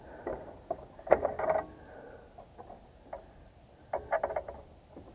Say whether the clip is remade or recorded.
recorded